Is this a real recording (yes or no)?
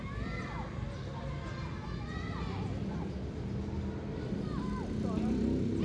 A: yes